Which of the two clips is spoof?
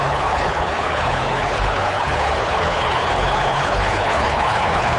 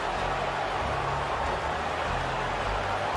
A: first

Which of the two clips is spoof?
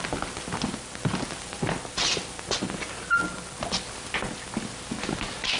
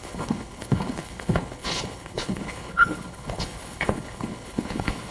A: second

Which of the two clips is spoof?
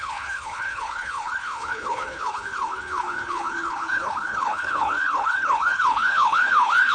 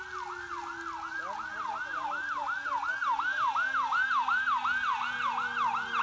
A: first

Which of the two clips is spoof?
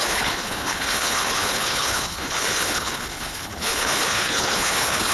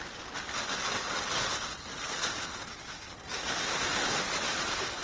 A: first